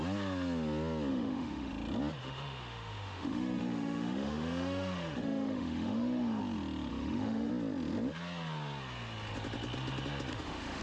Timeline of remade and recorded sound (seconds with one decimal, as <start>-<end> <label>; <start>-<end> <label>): 0.0-1.1 recorded; 1.1-1.7 remade; 1.7-2.2 recorded; 2.2-6.4 remade; 6.4-6.9 recorded; 6.9-7.5 remade; 7.5-10.3 recorded; 10.3-10.8 remade